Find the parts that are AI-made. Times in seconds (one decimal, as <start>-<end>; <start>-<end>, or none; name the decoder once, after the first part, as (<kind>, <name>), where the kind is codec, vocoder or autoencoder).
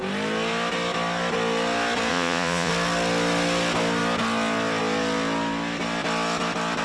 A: 2.1-2.7 (vocoder, Vocos)